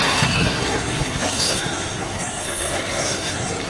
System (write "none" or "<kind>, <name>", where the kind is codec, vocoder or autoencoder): codec, SNAC